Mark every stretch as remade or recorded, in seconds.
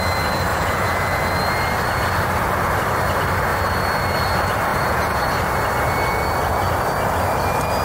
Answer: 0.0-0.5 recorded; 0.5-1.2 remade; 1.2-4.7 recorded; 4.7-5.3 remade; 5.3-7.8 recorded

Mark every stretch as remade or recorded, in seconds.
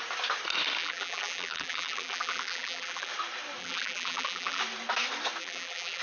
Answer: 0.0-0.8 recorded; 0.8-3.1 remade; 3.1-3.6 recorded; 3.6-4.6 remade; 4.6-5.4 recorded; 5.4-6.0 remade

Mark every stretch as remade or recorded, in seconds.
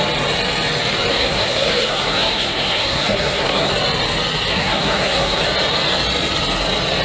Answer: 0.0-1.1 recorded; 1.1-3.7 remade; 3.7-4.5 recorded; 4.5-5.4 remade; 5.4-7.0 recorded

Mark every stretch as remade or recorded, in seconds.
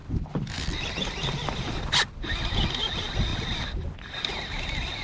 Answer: 0.0-5.0 recorded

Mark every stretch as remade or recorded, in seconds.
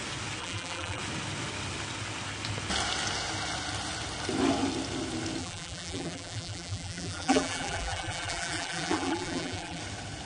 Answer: 0.0-0.4 recorded; 0.4-1.0 remade; 1.0-5.4 recorded; 5.4-9.8 remade; 9.8-10.3 recorded